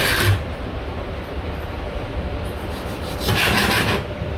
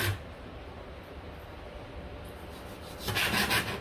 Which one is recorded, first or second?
second